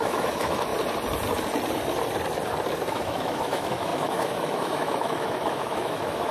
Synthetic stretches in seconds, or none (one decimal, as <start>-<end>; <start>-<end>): 0.0-0.7; 2.9-6.3